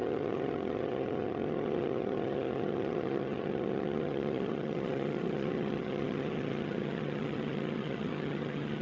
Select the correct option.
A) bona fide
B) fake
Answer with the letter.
B